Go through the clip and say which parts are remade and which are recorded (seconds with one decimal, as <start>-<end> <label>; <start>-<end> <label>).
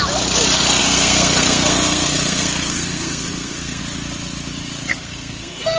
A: 0.0-0.8 recorded; 0.8-3.8 remade; 3.8-4.9 recorded; 4.9-5.8 remade